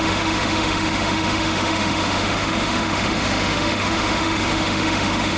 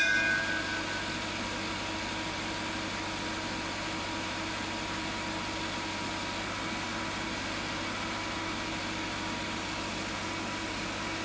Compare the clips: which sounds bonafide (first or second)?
second